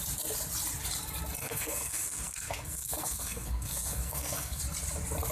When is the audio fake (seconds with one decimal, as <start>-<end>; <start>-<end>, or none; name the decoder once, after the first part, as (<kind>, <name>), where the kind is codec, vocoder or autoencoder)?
1.4-4.6 (codec, SNAC)